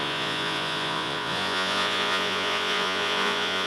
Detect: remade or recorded remade